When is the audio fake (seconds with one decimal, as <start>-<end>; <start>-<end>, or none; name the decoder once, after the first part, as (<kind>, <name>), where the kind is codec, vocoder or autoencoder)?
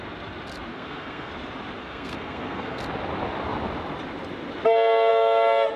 0.7-1.3 (codec, SNAC); 1.8-2.8